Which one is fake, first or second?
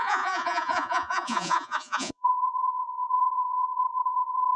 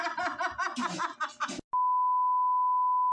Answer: first